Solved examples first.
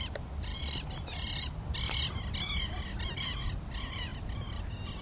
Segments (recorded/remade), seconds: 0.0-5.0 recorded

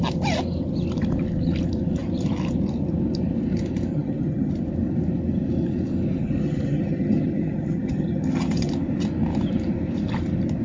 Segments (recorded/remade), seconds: 0.0-3.9 recorded; 3.9-4.5 remade; 4.5-6.2 recorded; 6.2-8.7 remade; 8.7-10.6 recorded

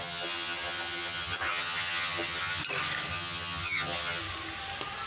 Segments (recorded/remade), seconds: 0.0-2.6 remade; 2.6-3.1 recorded; 3.1-4.2 remade; 4.2-5.1 recorded

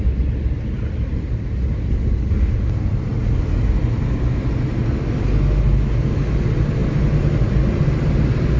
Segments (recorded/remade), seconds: 0.0-8.6 recorded

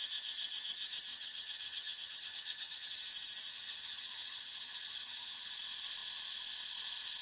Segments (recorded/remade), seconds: 0.0-1.1 recorded; 1.1-2.9 remade; 2.9-3.5 recorded; 3.5-5.5 remade; 5.5-7.2 recorded